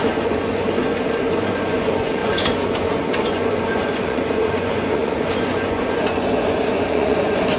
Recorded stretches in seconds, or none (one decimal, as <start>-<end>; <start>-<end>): none